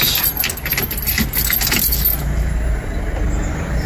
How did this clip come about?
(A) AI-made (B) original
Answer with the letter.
B